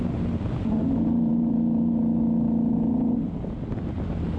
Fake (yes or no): no